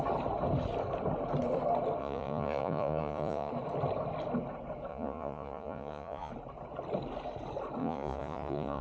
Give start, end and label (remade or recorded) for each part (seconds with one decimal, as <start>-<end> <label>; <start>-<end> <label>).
0.0-2.0 recorded; 2.0-3.5 remade; 3.5-4.9 recorded; 4.9-6.3 remade; 6.3-7.8 recorded; 7.8-8.8 remade